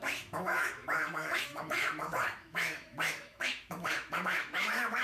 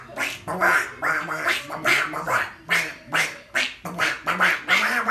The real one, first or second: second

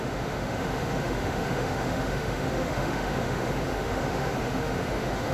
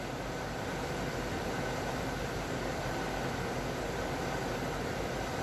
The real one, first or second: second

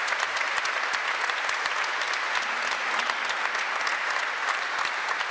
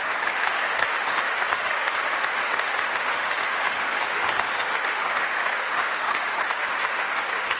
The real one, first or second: first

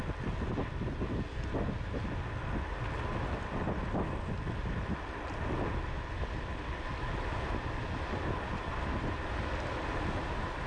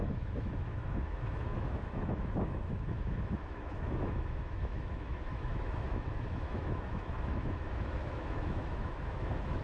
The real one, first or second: first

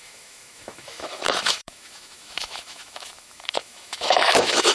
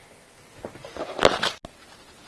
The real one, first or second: second